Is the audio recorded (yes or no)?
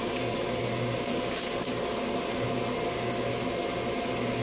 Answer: yes